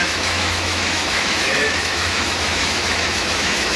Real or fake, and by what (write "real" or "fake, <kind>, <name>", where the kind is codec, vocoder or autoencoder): fake, autoencoder, DAC-VAE